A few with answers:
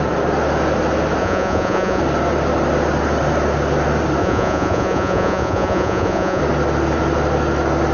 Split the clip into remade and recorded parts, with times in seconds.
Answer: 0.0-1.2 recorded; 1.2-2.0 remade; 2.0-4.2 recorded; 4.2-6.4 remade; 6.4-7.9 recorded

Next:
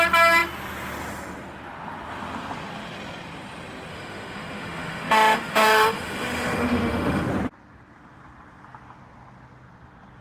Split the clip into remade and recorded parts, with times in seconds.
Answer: 0.0-3.9 recorded; 3.9-7.3 remade; 7.3-10.2 recorded

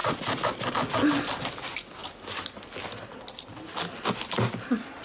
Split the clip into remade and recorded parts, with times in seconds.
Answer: 0.0-5.0 recorded

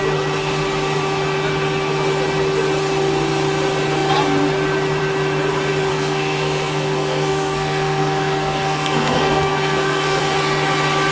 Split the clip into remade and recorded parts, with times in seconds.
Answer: 0.0-5.9 recorded; 5.9-10.2 remade; 10.2-11.1 recorded

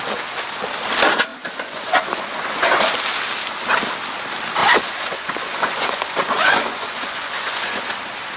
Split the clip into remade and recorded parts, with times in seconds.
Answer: 0.0-1.3 recorded; 1.3-2.9 remade; 2.9-4.6 recorded; 4.6-7.8 remade; 7.8-8.4 recorded

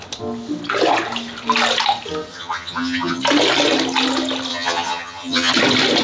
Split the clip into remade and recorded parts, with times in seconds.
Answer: 0.0-2.3 recorded; 2.3-3.2 remade; 3.2-4.5 recorded; 4.5-5.5 remade; 5.5-6.0 recorded

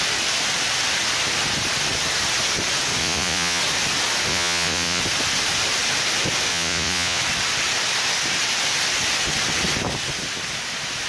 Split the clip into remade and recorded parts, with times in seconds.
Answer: 0.0-3.0 recorded; 3.0-3.6 remade; 3.6-4.3 recorded; 4.3-5.0 remade; 5.0-6.5 recorded; 6.5-7.2 remade; 7.2-11.1 recorded

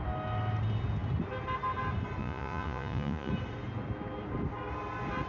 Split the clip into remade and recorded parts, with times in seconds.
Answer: 0.0-2.2 recorded; 2.2-3.3 remade; 3.3-5.3 recorded